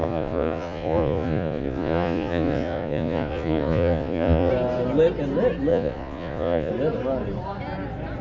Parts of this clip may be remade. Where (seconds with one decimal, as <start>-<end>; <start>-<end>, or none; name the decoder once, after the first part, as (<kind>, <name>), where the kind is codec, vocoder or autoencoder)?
0.0-4.5 (vocoder, Vocos); 5.7-6.7